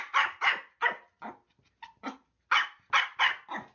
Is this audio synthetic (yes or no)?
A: no